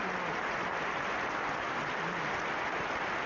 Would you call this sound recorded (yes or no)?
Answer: yes